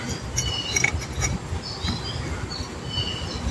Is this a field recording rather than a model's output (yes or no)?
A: yes